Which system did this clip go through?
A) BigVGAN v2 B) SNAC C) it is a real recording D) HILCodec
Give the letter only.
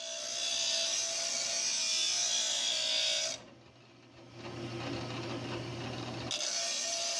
C